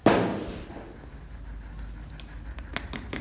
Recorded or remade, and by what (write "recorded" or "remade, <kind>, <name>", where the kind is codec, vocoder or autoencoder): recorded